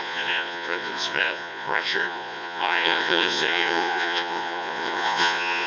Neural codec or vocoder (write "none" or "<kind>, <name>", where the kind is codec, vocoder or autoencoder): vocoder, Vocos